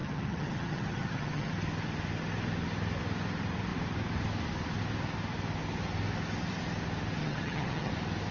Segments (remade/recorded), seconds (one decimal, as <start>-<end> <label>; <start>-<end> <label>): 0.0-1.5 remade; 1.5-7.2 recorded; 7.2-7.9 remade; 7.9-8.3 recorded